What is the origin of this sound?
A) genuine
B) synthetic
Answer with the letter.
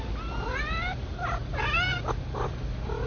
A